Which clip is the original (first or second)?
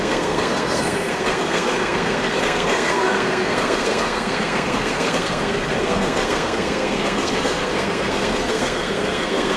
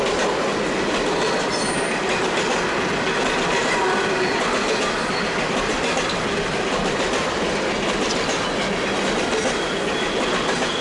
second